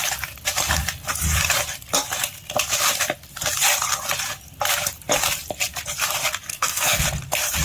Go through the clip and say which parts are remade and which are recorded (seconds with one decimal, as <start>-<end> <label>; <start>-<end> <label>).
0.0-6.5 recorded; 6.5-7.0 remade; 7.0-7.6 recorded